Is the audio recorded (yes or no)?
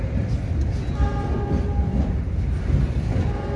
yes